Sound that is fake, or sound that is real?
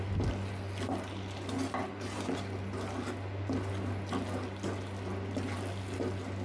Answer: real